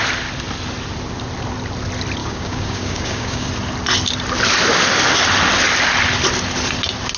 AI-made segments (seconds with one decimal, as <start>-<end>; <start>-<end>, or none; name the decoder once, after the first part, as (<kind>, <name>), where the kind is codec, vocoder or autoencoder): 2.2-3.5 (codec, DAC)